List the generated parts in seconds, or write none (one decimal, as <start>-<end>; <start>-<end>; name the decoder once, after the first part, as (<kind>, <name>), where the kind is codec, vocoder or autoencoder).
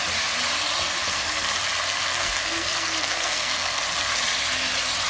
1.1-1.6 (codec, SNAC); 2.1-3.8